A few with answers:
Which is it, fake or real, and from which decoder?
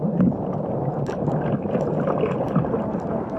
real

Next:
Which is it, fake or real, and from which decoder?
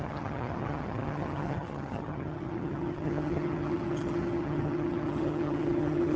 fake, vocoder, HiFi-GAN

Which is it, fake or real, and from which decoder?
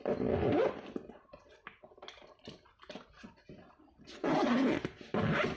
real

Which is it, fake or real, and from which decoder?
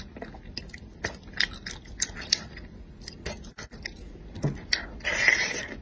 real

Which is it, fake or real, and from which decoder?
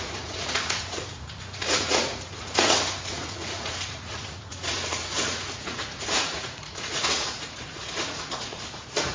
fake, vocoder, Vocos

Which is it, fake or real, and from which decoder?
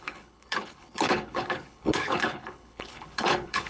fake, codec, HILCodec